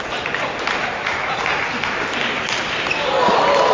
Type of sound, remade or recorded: recorded